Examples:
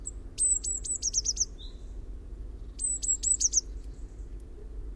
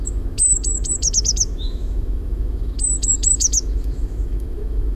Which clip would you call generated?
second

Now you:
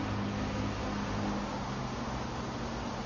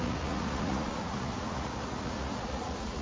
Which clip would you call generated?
second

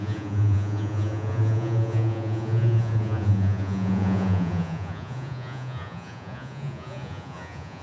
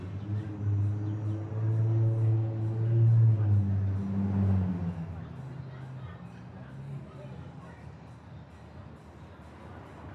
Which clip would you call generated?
first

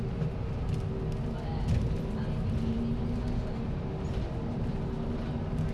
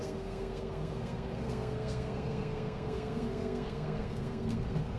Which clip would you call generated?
second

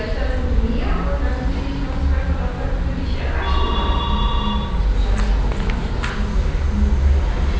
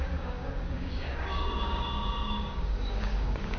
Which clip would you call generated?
second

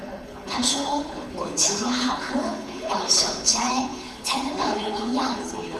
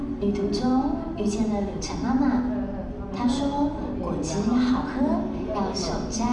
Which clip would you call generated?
first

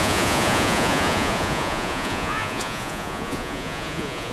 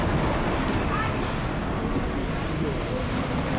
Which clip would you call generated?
first